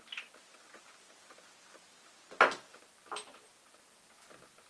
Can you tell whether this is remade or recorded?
recorded